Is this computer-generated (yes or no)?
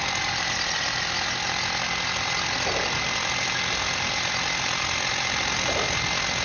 no